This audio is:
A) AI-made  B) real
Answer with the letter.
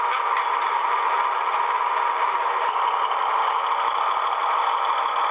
B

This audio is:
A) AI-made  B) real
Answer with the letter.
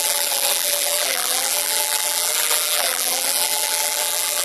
A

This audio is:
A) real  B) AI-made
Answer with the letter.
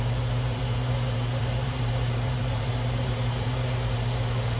B